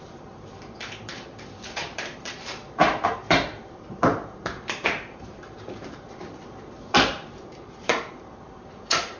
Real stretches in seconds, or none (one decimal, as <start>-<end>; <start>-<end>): none